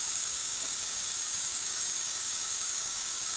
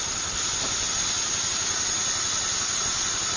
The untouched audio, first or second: second